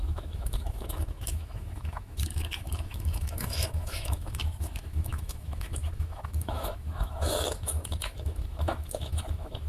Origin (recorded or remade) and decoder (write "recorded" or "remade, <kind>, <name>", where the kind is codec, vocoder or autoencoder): remade, autoencoder, DAC-VAE